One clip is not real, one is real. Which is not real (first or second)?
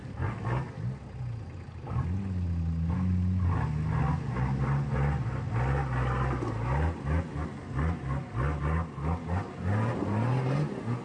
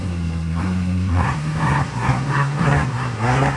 second